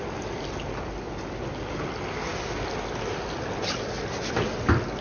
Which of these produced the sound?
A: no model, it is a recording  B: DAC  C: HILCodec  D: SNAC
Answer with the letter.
A